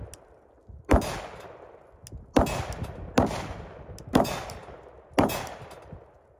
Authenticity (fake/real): real